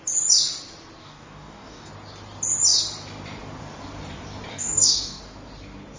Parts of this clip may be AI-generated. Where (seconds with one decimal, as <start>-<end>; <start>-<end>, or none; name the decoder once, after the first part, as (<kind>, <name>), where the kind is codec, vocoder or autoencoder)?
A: 1.0-1.9 (codec, DAC); 4.5-5.2